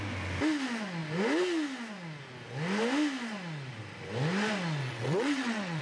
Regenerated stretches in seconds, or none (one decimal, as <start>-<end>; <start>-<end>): 4.8-5.8